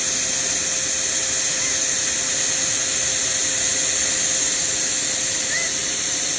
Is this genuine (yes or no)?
yes